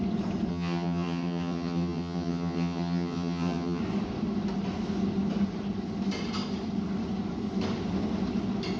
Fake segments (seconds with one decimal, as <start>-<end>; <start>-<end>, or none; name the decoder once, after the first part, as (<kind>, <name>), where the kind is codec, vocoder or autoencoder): 0.5-3.8 (vocoder, HiFi-GAN)